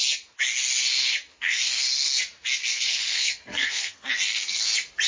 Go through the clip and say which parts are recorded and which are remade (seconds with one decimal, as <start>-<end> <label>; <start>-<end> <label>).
0.0-1.3 recorded; 1.3-1.8 remade; 1.8-2.7 recorded; 2.7-4.1 remade; 4.1-5.1 recorded

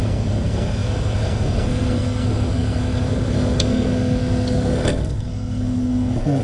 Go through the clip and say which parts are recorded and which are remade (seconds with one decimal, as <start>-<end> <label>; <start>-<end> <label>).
0.0-6.4 remade

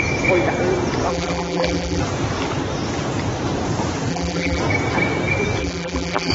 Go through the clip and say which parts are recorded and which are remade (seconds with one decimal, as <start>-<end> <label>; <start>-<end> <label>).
0.0-1.1 recorded; 1.1-2.0 remade; 2.0-4.1 recorded; 4.1-4.6 remade; 4.6-5.6 recorded; 5.6-6.3 remade

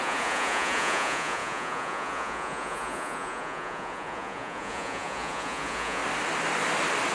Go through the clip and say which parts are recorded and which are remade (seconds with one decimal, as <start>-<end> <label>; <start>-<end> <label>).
0.0-6.0 remade; 6.0-7.1 recorded

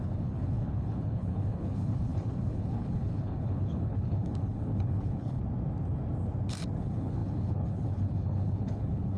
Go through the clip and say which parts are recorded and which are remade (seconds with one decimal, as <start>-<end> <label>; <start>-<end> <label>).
0.0-5.4 remade; 5.4-6.8 recorded; 6.8-9.2 remade

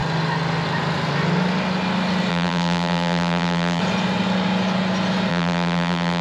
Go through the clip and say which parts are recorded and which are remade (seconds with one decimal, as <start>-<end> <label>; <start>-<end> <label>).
0.0-2.3 recorded; 2.3-3.8 remade; 3.8-5.3 recorded; 5.3-6.2 remade

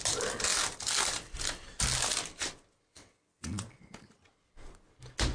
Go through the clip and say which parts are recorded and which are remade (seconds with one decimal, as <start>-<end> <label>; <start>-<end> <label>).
0.0-2.9 recorded; 2.9-3.7 remade; 3.7-5.3 recorded